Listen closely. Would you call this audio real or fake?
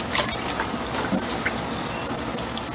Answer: real